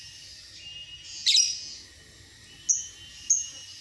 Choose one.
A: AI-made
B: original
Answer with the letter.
B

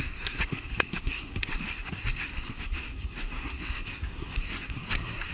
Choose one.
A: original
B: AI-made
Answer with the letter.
B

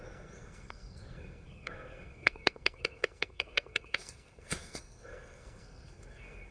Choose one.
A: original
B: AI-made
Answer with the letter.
B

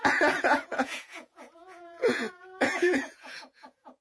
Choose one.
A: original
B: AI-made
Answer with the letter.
B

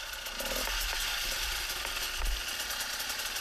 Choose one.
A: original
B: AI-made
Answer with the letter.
A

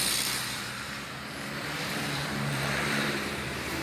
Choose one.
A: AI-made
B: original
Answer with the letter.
A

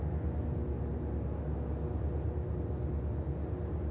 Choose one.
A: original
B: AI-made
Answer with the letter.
A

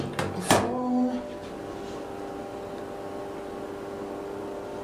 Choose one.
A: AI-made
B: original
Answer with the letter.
B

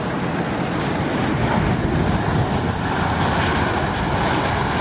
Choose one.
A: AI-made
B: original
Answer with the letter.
B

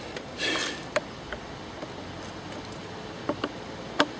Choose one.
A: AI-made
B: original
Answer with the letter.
B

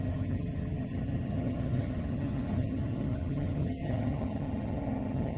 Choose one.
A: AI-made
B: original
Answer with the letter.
A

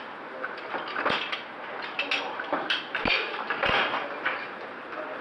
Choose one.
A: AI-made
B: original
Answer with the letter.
B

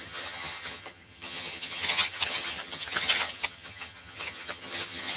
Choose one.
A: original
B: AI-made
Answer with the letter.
B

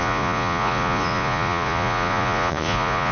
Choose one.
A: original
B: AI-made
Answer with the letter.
B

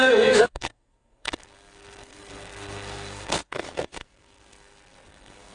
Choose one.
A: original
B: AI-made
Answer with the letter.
B